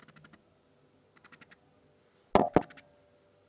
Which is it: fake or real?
real